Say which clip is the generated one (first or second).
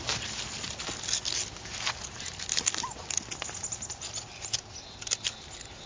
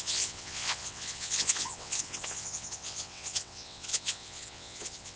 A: second